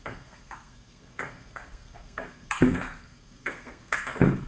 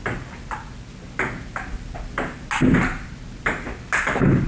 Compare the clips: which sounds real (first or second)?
second